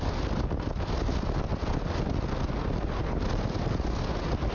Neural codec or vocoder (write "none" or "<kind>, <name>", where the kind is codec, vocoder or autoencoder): none